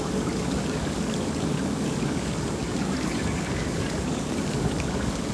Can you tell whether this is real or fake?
fake